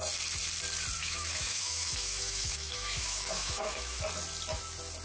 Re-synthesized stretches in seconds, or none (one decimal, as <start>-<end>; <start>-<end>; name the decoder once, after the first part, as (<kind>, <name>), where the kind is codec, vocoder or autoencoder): 1.0-4.0 (autoencoder, DAC-VAE)